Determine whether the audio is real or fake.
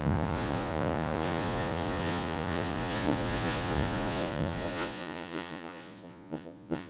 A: fake